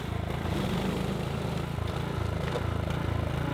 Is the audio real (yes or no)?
yes